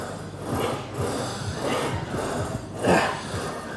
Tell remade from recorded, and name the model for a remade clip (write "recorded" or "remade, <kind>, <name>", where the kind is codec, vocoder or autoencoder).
recorded